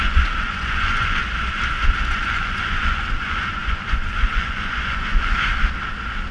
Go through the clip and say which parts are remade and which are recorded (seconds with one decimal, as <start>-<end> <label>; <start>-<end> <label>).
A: 0.0-1.2 remade; 1.2-2.1 recorded; 2.1-5.5 remade; 5.5-6.3 recorded